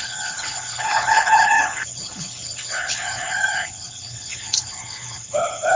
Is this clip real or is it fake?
fake